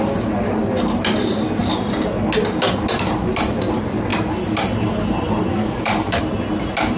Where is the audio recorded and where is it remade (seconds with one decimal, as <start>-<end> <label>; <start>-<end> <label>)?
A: 0.0-5.5 recorded; 5.5-6.2 remade; 6.2-7.0 recorded